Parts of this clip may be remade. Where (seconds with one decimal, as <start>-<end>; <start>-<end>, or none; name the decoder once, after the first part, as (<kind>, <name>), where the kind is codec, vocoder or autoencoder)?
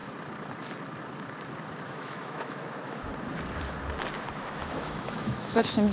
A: 1.9-3.1 (autoencoder, DAC-VAE); 4.4-5.9